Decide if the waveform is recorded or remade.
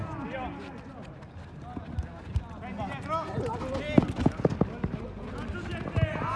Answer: recorded